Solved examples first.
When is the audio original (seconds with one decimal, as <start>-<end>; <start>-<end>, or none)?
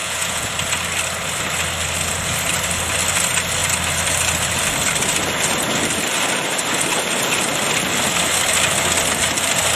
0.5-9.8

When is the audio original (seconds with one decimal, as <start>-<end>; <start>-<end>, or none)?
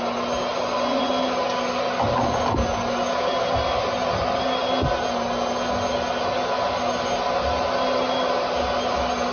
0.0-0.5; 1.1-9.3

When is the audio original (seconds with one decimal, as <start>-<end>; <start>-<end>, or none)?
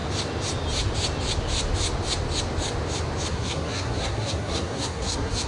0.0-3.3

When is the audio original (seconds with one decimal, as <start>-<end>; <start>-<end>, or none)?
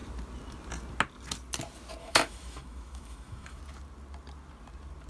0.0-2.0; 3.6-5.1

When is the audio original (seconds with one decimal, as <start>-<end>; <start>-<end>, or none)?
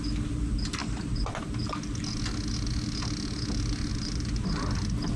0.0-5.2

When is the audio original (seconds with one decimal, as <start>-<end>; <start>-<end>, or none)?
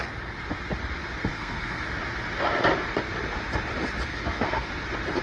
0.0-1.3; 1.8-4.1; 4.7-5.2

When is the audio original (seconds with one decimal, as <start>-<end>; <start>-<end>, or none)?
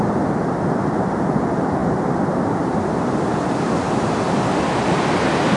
0.0-5.6